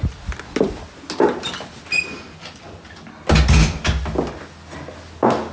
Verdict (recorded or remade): recorded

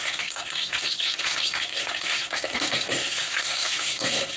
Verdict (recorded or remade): remade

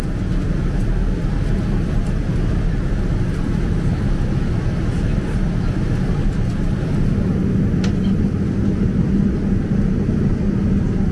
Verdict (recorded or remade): recorded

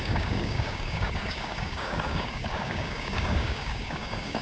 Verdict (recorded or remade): remade